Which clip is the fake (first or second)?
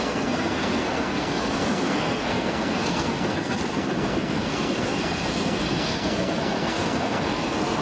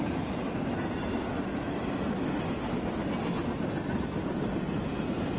first